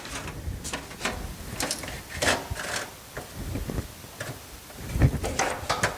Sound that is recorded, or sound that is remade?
recorded